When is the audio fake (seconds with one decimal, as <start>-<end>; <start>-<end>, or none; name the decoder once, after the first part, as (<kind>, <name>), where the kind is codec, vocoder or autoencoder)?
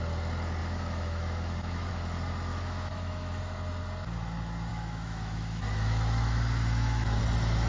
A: 0.6-1.9 (autoencoder, DAC-VAE); 2.5-3.4; 4.7-7.2